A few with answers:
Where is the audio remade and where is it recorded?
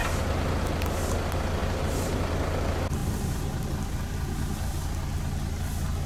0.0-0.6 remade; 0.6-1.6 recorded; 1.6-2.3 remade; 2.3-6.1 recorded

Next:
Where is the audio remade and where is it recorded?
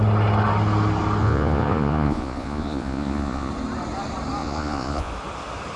0.0-1.2 recorded; 1.2-3.5 remade; 3.5-4.4 recorded; 4.4-5.1 remade; 5.1-5.8 recorded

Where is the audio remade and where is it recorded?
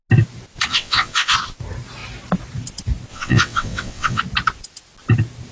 0.0-0.7 recorded; 0.7-1.3 remade; 1.3-3.1 recorded; 3.1-4.2 remade; 4.2-5.5 recorded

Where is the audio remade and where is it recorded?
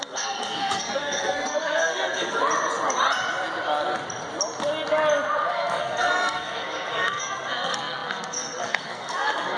0.0-2.4 remade; 2.4-5.5 recorded; 5.5-9.6 remade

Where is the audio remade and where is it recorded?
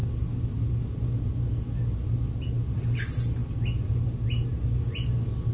0.0-5.5 recorded